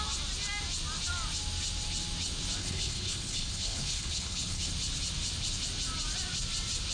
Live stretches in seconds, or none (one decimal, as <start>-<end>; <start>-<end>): 0.0-2.6; 4.7-6.9